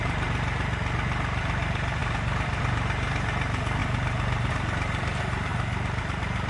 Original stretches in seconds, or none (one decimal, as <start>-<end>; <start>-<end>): 0.8-1.4; 5.5-6.0